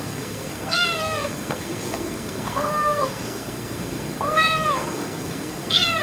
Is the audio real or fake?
fake